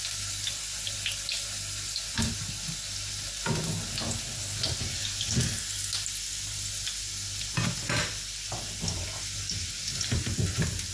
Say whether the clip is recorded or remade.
recorded